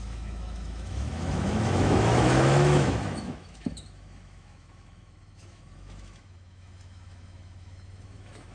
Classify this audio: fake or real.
fake